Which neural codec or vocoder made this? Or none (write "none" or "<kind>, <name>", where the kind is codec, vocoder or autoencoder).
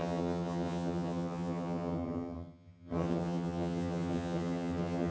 vocoder, HiFi-GAN